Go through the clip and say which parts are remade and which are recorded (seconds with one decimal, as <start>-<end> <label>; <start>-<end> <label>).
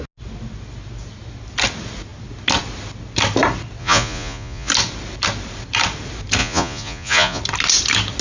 0.0-3.8 recorded; 3.8-4.7 remade; 4.7-6.4 recorded; 6.4-7.4 remade; 7.4-8.2 recorded